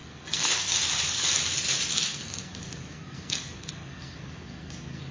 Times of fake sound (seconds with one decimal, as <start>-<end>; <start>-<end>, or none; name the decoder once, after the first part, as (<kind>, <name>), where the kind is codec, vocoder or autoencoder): 0.0-0.9 (codec, SNAC); 1.9-5.1